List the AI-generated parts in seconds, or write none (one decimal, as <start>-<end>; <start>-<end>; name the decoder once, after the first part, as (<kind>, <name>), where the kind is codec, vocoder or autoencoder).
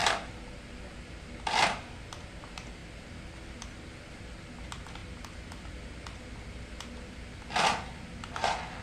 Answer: none